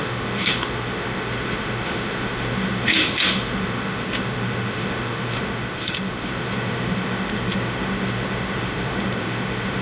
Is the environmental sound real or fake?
fake